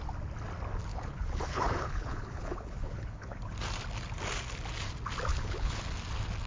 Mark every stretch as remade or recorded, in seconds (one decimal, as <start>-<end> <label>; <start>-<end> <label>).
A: 0.0-0.9 recorded; 0.9-3.4 remade; 3.4-5.3 recorded; 5.3-5.8 remade; 5.8-6.5 recorded